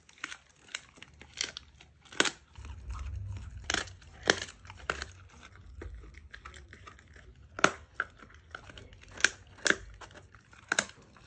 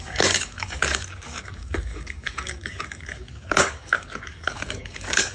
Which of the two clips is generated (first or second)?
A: second